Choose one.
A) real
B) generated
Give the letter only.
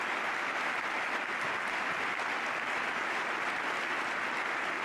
A